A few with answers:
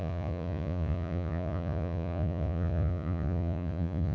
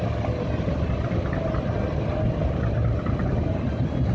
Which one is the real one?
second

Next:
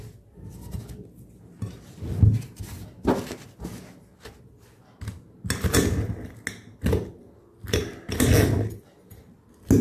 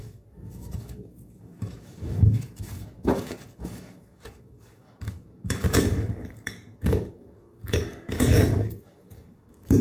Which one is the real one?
first